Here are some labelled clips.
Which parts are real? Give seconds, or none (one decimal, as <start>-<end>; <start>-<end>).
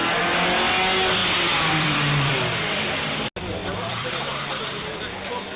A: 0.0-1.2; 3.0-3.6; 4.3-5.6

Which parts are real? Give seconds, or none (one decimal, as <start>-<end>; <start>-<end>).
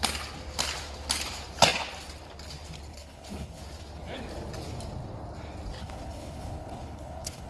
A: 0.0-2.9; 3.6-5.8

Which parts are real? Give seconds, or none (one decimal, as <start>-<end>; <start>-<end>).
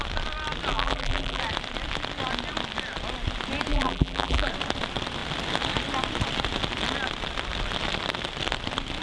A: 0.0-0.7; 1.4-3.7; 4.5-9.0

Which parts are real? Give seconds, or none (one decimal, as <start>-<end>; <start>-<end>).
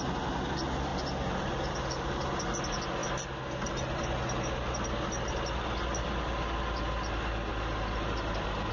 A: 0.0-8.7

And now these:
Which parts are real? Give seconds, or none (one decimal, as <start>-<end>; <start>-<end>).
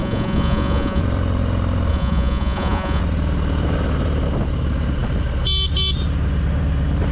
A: 1.0-1.9; 3.0-7.1